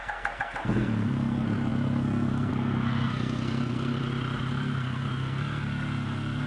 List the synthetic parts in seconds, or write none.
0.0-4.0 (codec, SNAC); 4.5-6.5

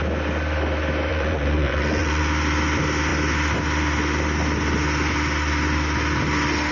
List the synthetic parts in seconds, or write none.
1.1-2.2 (vocoder, Vocos)

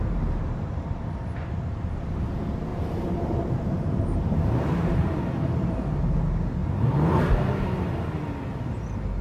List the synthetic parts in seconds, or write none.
2.7-5.2 (vocoder, BigVGAN v2); 6.6-7.8